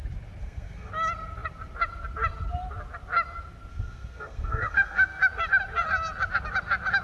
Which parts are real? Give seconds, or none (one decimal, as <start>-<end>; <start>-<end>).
0.0-0.4; 0.9-3.7; 5.2-7.0

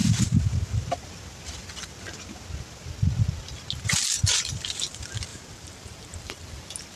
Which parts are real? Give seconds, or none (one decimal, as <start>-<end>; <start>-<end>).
0.0-5.3; 6.3-7.0

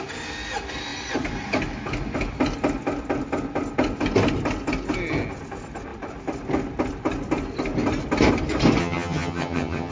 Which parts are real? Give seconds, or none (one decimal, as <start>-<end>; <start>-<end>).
0.0-8.8

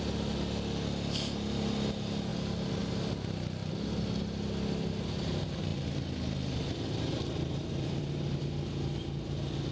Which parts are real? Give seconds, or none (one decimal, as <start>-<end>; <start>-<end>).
0.0-5.7; 8.6-9.7